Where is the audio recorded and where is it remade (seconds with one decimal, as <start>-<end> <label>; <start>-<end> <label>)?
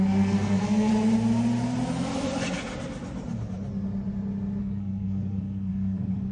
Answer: 0.0-0.9 remade; 0.9-4.6 recorded; 4.6-6.3 remade